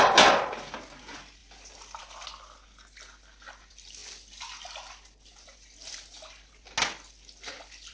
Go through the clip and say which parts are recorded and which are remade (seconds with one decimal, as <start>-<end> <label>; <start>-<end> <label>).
0.0-7.9 recorded